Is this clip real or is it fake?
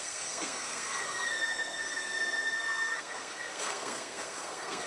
fake